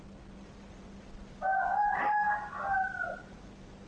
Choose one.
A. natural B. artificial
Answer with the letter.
A